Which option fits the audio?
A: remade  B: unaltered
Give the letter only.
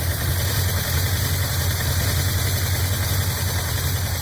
B